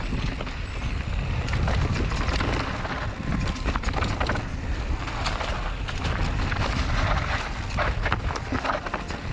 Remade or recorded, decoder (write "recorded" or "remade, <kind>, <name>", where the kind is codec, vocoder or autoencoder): recorded